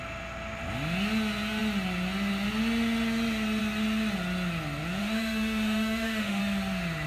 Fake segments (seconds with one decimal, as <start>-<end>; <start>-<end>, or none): 5.0-6.4